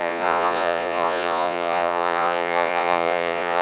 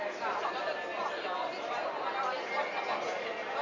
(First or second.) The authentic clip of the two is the second